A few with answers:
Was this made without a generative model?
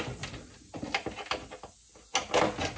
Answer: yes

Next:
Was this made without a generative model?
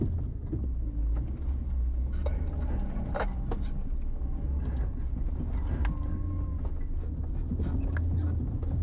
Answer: yes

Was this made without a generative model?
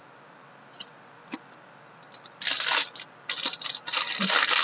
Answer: yes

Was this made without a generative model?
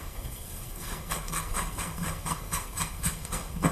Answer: no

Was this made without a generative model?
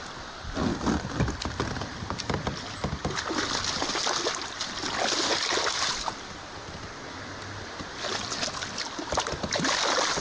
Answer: yes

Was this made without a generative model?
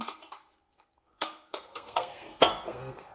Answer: no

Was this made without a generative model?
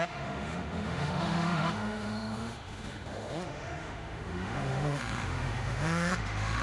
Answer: no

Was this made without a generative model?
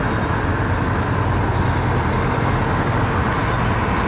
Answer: yes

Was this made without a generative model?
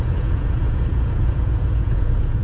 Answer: no